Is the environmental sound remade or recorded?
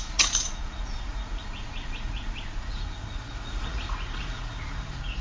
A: remade